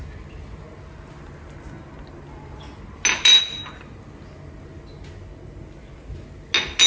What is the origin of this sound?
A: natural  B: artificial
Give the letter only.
A